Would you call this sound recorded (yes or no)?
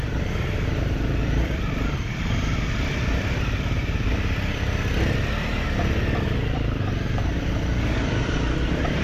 no